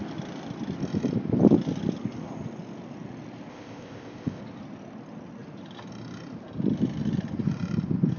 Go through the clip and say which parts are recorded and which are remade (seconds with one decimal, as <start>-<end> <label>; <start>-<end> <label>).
0.0-3.5 recorded; 3.5-4.4 remade; 4.4-8.2 recorded